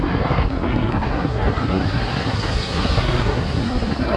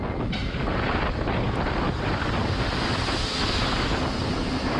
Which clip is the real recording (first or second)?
second